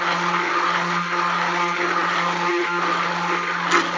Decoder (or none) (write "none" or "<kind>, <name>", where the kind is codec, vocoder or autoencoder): none